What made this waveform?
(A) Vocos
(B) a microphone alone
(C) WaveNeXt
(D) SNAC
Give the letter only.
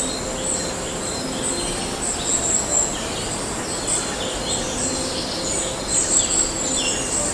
B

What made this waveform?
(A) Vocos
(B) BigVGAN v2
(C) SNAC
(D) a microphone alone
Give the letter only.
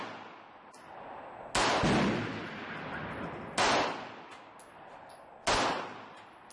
D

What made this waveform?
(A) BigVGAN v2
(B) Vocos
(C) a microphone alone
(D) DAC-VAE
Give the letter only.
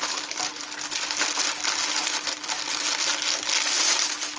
C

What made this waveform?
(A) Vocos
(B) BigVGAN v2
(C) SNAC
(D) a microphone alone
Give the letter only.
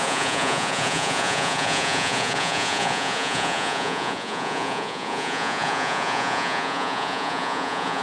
A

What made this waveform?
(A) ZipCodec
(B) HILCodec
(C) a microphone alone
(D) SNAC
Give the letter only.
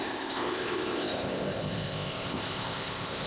A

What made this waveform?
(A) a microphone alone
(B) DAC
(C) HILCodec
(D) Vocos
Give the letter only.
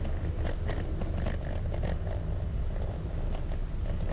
A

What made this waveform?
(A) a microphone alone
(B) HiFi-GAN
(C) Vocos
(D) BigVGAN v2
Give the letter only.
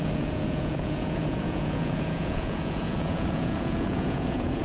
C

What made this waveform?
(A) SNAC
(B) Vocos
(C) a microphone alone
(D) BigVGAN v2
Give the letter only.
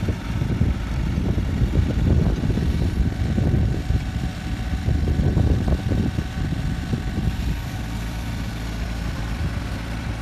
D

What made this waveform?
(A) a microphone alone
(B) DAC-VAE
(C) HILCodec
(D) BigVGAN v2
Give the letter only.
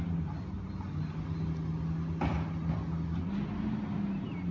A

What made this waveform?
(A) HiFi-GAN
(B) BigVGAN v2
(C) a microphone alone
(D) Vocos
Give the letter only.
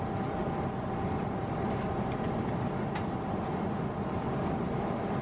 B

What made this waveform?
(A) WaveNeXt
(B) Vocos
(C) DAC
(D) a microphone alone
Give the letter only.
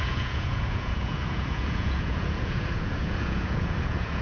B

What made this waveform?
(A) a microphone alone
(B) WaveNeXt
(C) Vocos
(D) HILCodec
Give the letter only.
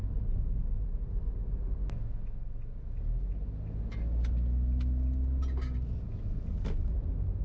A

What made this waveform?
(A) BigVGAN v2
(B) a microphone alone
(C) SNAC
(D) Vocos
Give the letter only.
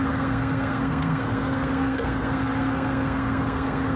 C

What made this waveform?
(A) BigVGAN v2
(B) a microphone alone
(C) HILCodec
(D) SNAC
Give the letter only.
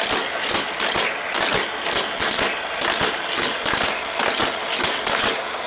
B